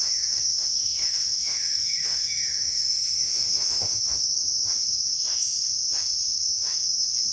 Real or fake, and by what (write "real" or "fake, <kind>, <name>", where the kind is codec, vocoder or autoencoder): fake, autoencoder, DAC-VAE